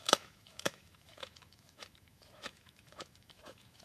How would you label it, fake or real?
fake